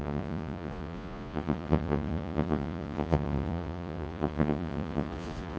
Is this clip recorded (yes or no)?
no